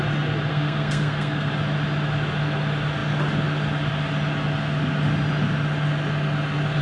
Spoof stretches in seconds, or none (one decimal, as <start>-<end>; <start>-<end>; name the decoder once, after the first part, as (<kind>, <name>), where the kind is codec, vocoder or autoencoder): 0.5-1.5 (codec, SNAC)